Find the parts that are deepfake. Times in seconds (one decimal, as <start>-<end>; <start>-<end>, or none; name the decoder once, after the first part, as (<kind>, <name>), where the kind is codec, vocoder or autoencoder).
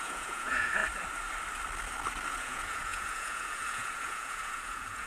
0.0-0.8 (vocoder, Vocos); 2.3-5.1